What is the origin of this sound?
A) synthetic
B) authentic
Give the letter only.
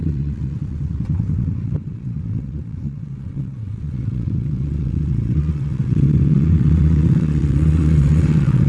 A